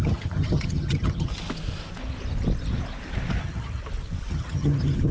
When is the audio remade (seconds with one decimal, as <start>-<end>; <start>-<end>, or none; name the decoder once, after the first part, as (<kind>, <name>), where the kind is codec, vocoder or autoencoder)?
0.0-1.3 (vocoder, HiFi-GAN); 3.4-3.8; 4.3-5.1